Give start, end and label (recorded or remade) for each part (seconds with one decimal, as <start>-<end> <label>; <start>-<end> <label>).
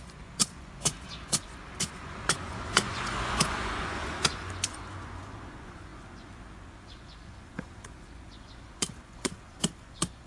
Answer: 0.0-10.3 remade